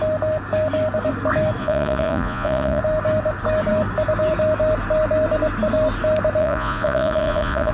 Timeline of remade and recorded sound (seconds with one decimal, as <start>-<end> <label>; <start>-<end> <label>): 0.0-1.6 recorded; 1.6-2.8 remade; 2.8-6.4 recorded; 6.4-7.7 remade